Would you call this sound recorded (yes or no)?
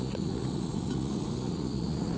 no